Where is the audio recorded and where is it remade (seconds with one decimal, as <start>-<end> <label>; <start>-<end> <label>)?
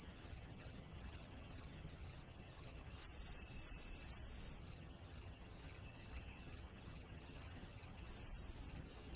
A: 0.0-3.0 remade; 3.0-4.6 recorded; 4.6-8.1 remade; 8.1-8.7 recorded; 8.7-9.2 remade